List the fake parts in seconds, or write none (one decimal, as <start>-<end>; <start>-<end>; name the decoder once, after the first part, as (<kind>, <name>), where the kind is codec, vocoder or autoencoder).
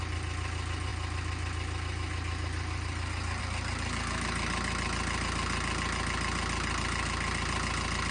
none